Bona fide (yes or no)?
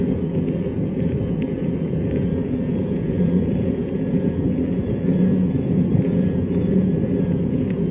no